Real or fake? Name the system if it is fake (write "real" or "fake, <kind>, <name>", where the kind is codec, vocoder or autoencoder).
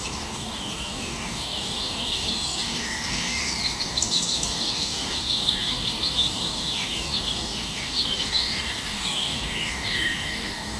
fake, codec, DAC